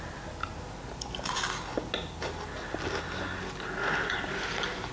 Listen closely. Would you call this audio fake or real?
real